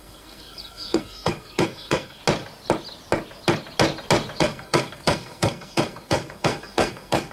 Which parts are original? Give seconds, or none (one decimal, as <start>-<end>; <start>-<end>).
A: 2.2-4.4